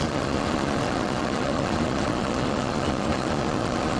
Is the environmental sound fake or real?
fake